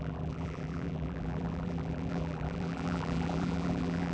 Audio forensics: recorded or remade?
remade